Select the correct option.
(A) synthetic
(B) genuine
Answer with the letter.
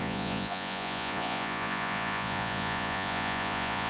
A